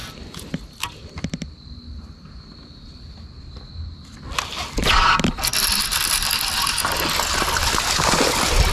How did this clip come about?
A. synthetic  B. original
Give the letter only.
B